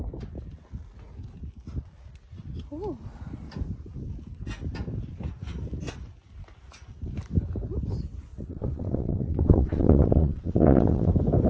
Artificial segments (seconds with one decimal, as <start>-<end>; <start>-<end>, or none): 8.3-11.1